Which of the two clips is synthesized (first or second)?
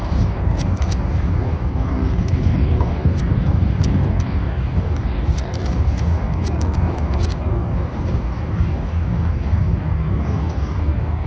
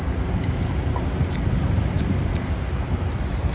first